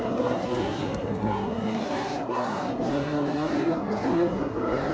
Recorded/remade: remade